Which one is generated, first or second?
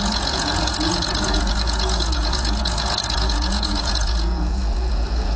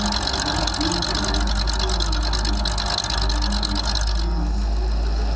first